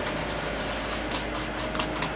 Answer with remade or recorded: recorded